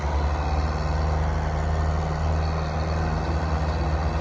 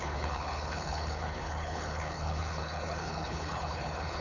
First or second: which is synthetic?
second